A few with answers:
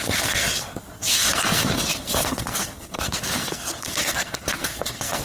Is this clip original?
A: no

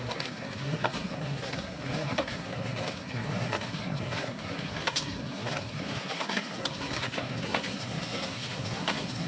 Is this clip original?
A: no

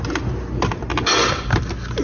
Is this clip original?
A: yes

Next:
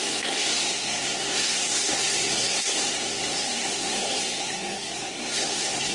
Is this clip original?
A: no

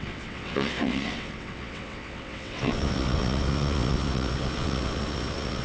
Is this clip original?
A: no